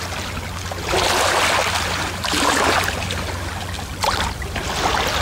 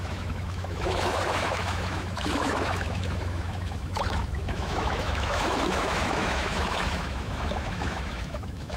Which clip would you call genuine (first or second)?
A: first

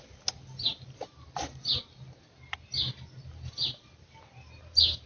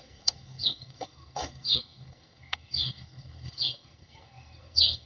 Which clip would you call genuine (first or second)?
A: first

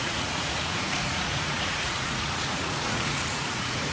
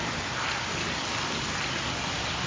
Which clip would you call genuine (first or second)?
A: second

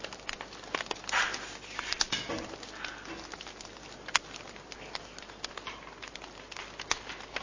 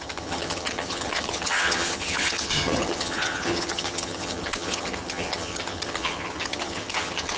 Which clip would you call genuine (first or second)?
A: first